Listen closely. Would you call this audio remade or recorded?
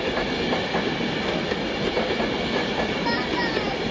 recorded